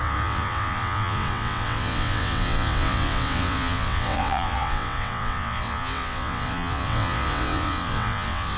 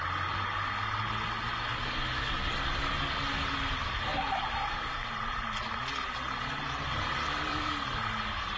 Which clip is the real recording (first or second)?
second